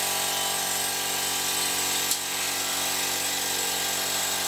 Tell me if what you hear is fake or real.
real